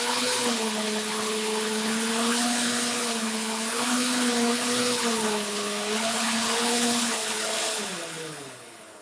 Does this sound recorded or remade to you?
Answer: remade